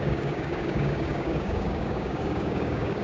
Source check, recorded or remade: remade